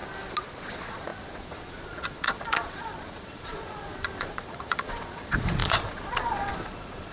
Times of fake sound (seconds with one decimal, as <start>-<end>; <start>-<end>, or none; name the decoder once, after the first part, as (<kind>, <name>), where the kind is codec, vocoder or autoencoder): 0.6-7.1 (vocoder, Vocos)